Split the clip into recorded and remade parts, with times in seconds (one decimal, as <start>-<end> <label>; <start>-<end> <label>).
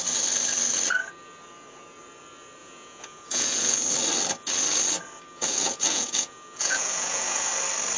0.0-2.6 recorded; 2.6-3.8 remade; 3.8-5.4 recorded; 5.4-7.5 remade; 7.5-8.0 recorded